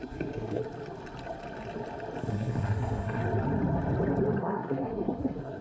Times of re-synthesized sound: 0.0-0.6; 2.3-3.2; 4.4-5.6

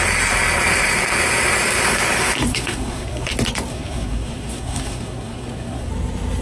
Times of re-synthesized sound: 2.5-3.3; 3.7-5.9